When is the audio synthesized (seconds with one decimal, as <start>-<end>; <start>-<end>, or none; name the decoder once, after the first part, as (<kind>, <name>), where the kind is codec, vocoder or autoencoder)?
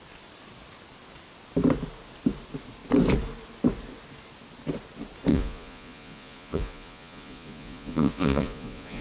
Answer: 5.3-9.0 (vocoder, Vocos)